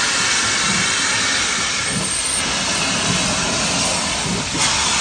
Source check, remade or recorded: recorded